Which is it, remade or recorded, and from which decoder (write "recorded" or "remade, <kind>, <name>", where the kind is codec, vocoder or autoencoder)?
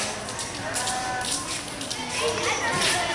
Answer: recorded